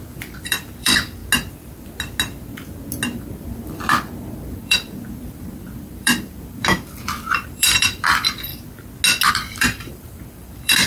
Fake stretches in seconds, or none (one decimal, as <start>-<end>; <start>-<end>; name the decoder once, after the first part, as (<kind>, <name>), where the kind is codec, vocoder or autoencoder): 0.0-1.2 (vocoder, BigVGAN v2); 3.2-8.5; 9.3-10.9